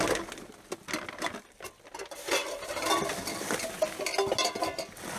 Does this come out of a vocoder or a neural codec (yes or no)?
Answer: no